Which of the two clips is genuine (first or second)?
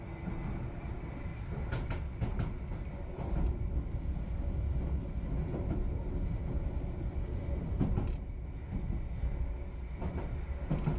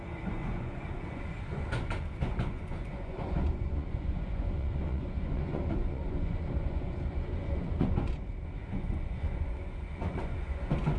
first